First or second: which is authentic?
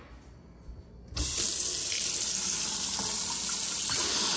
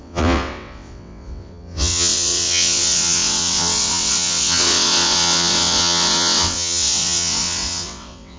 first